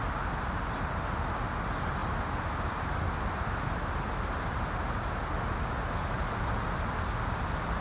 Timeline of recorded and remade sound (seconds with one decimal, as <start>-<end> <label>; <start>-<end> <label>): 0.0-7.8 recorded